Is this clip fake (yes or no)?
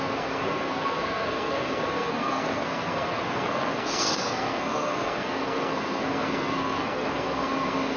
yes